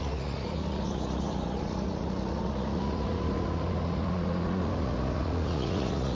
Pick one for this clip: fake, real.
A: fake